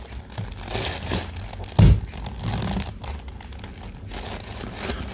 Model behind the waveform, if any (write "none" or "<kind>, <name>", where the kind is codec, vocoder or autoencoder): none